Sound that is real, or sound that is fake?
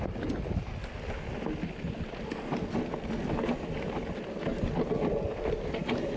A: real